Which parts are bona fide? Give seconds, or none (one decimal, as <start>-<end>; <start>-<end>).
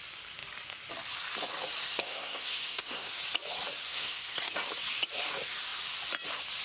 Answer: 0.0-1.8; 3.1-3.9; 4.5-6.6